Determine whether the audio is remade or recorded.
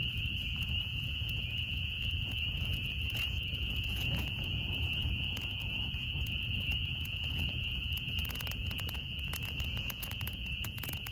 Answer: remade